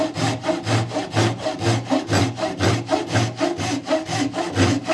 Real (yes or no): yes